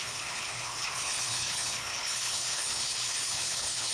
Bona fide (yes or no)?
no